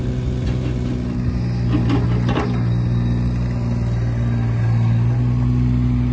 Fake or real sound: real